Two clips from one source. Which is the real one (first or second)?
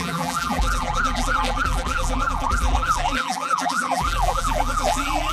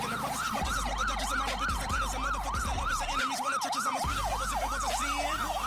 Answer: second